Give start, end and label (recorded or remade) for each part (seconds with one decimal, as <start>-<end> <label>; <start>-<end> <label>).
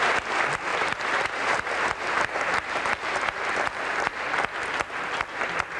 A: 0.0-0.7 recorded; 0.7-4.2 remade; 4.2-5.8 recorded